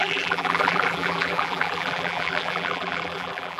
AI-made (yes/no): yes